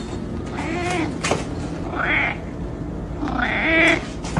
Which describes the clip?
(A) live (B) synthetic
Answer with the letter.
A